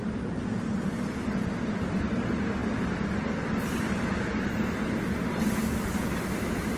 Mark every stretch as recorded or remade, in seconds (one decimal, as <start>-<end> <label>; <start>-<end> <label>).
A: 0.0-6.8 recorded